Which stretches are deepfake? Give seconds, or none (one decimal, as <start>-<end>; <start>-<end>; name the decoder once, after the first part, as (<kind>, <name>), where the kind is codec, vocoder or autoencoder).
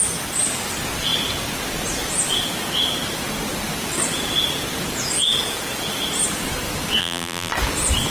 7.0-7.5 (vocoder, BigVGAN v2)